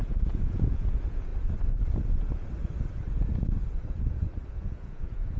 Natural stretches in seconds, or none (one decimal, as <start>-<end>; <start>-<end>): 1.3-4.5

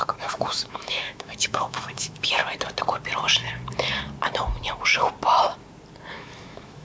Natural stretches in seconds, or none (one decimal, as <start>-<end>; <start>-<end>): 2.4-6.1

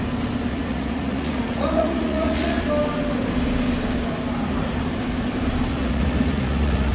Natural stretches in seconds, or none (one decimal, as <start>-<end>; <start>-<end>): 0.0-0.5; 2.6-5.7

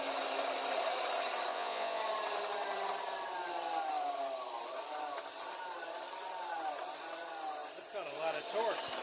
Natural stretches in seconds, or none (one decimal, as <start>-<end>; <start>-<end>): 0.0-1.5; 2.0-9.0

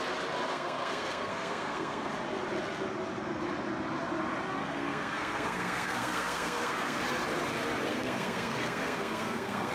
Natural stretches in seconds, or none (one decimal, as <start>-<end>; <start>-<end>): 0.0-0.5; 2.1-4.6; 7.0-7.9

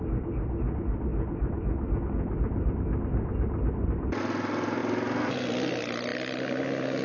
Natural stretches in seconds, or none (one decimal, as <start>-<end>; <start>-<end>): 0.0-7.0

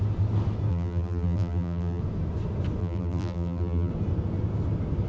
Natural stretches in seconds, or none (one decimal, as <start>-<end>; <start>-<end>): 0.0-0.7; 2.0-2.8; 3.9-5.1

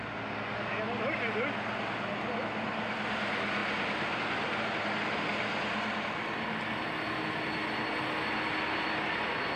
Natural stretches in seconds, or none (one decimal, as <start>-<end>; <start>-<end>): 0.0-9.6